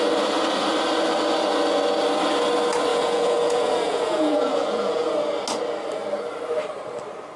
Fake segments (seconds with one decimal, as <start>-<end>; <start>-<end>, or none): 2.9-5.1